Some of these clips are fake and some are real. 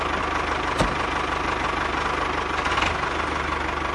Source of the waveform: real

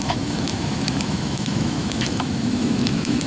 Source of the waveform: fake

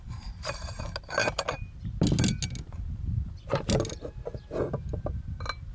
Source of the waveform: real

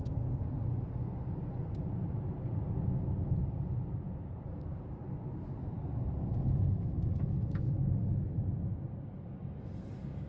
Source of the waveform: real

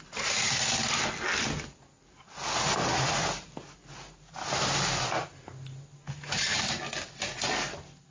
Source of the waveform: real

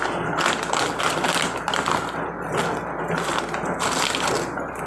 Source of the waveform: real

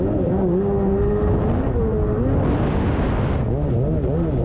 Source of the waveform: real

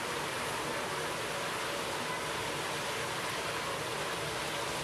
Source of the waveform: real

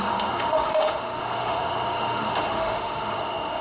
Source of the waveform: fake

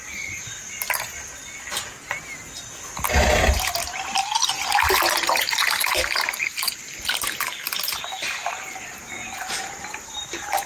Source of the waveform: real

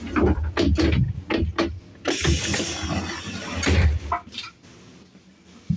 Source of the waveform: real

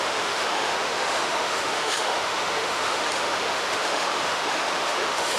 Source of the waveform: fake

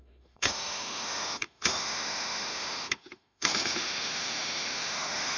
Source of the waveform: fake